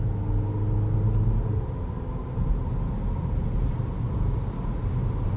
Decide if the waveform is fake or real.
real